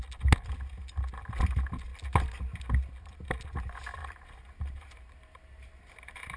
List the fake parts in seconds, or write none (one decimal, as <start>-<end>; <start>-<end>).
4.0-6.4